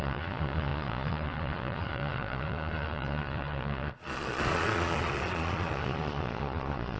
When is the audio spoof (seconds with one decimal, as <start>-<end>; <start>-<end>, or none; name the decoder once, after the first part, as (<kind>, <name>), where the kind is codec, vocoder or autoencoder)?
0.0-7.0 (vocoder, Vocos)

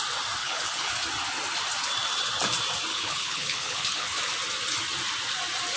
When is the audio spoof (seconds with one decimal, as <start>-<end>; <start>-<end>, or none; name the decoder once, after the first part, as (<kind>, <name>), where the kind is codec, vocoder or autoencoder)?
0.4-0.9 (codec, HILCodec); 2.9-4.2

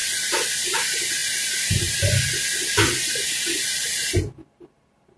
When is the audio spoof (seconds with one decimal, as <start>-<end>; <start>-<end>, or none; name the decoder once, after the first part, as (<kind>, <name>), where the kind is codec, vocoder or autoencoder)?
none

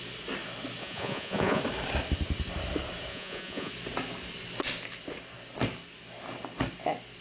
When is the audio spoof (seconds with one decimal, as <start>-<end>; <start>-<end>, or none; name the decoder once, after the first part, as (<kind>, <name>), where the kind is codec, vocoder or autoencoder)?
0.8-1.6 (vocoder, Vocos); 3.1-3.7